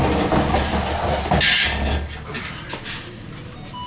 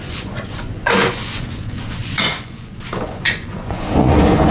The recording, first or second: first